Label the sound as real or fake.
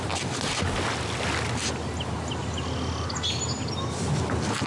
real